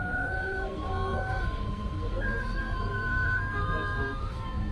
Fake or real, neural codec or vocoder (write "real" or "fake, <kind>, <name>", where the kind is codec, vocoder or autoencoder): fake, codec, SNAC